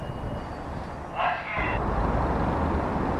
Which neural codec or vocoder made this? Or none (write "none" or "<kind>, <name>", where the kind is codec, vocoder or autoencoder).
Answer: none